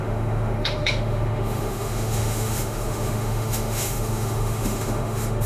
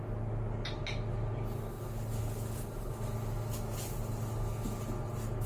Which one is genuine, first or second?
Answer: second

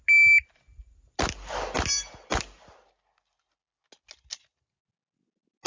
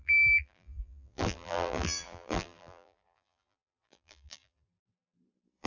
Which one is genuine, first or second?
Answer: first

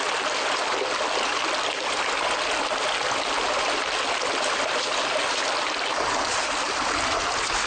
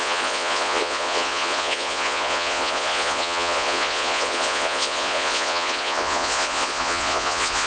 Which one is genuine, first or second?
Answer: first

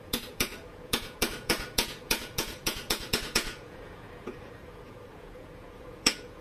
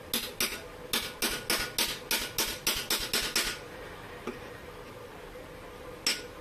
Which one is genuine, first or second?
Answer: second